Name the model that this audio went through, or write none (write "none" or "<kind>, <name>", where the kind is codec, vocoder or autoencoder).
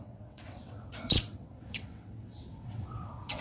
vocoder, WaveNeXt